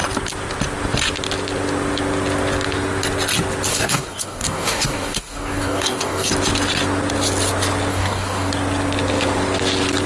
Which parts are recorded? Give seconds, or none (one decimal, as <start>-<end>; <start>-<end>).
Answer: 0.0-3.7; 6.3-7.9; 8.5-10.1